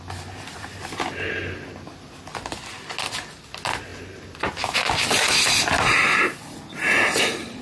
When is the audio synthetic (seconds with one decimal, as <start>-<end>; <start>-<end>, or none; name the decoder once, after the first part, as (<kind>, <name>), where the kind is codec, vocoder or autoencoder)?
none